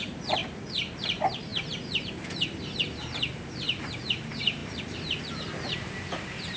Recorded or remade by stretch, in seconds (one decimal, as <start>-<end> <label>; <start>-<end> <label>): 0.0-0.4 remade; 0.4-1.0 recorded; 1.0-6.6 remade